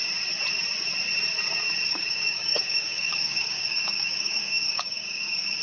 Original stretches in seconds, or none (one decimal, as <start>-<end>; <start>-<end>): 0.0-1.9